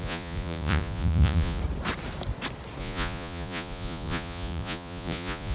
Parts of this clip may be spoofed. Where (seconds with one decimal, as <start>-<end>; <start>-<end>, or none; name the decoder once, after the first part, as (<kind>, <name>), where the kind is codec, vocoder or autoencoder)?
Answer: 0.0-1.6 (vocoder, Vocos); 2.8-5.5